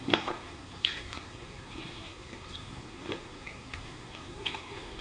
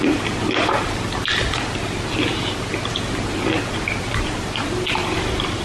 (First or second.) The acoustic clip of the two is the second